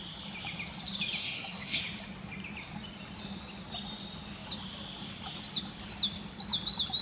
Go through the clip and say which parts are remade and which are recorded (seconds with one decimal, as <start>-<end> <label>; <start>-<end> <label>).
0.0-1.2 recorded; 1.2-1.8 remade; 1.8-7.0 recorded

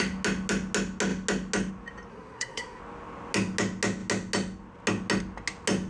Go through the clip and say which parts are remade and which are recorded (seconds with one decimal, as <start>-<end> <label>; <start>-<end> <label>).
0.0-2.1 recorded; 2.1-2.8 remade; 2.8-5.9 recorded

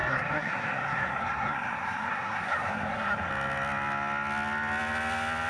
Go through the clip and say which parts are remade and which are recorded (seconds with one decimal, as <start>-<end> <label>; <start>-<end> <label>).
0.0-3.3 remade; 3.3-5.5 recorded

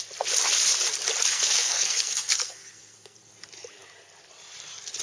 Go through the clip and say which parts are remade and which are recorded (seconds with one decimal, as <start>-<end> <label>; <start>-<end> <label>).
0.0-1.3 recorded; 1.3-3.3 remade; 3.3-5.0 recorded

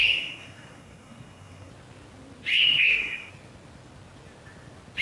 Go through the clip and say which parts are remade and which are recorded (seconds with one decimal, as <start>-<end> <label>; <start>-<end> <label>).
0.0-1.7 remade; 1.7-2.5 recorded; 2.5-3.3 remade; 3.3-5.0 recorded